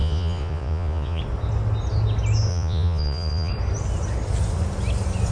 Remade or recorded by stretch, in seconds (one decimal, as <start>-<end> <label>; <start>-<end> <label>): 0.0-1.2 remade; 1.2-2.5 recorded; 2.5-3.5 remade; 3.5-5.3 recorded